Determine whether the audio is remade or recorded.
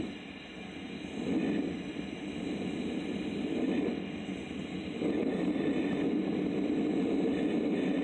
recorded